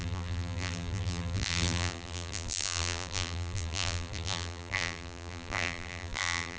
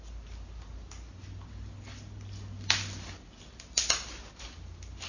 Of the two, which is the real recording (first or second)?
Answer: second